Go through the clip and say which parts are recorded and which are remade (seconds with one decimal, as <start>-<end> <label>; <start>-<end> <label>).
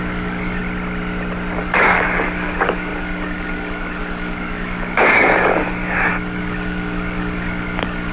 0.0-0.6 remade; 0.6-1.6 recorded; 1.6-8.1 remade